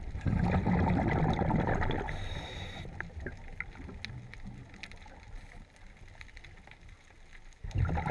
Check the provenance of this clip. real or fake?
real